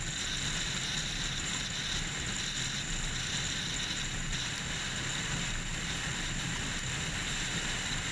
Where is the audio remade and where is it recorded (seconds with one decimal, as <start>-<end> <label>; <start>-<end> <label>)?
0.0-1.0 recorded; 1.0-1.6 remade; 1.6-8.1 recorded